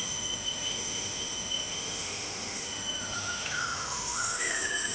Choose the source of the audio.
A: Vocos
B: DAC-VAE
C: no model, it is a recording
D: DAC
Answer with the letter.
B